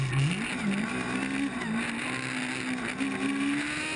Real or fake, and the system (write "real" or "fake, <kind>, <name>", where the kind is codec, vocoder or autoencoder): real